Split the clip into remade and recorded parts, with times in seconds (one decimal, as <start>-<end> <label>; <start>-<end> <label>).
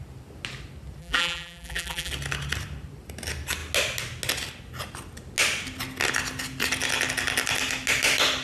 0.0-1.0 recorded; 1.0-2.1 remade; 2.1-8.4 recorded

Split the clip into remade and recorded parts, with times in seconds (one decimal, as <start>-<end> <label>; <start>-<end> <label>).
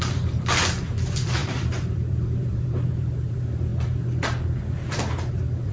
0.0-3.7 remade; 3.7-5.3 recorded; 5.3-5.7 remade